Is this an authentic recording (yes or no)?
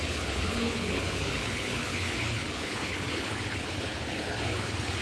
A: no